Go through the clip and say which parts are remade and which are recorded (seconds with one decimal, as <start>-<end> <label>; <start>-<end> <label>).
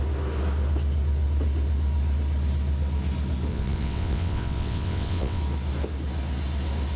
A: 0.0-3.5 recorded; 3.5-5.4 remade; 5.4-7.0 recorded